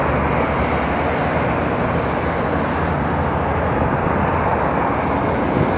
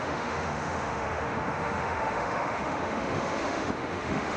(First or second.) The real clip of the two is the first